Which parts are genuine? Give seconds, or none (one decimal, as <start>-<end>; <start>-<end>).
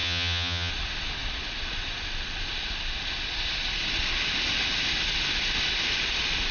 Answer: 0.7-6.5